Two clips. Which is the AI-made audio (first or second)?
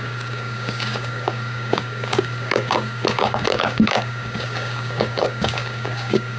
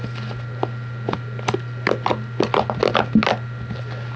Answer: first